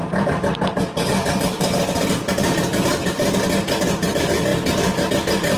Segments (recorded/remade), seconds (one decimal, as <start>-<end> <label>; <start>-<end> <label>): 0.0-3.4 remade; 3.4-5.6 recorded